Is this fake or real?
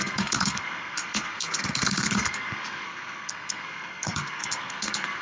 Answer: fake